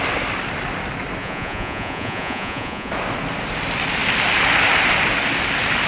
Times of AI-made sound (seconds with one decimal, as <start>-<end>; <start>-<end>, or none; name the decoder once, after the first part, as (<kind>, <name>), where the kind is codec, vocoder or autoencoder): 1.2-2.9 (vocoder, Vocos)

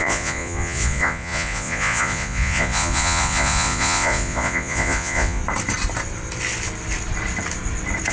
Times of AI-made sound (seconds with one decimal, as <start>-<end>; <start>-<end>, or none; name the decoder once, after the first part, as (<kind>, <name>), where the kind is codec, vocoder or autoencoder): 0.0-5.4 (vocoder, Vocos)

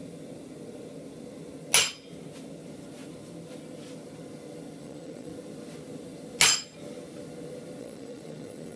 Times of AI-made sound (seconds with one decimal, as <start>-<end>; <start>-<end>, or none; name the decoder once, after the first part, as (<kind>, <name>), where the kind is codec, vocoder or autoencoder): 4.8-5.3 (vocoder, Vocos); 7.8-8.8

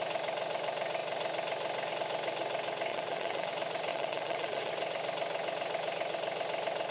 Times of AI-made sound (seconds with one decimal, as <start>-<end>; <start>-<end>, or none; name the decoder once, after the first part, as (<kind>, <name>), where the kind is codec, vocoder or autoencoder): 2.9-3.5 (vocoder, Vocos); 3.9-4.7